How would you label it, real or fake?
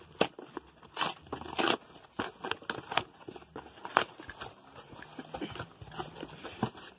real